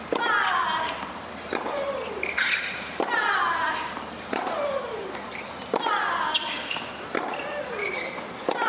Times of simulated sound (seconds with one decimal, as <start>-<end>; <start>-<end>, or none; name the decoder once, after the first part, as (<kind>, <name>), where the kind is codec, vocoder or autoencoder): 0.7-5.9 (vocoder, BigVGAN v2)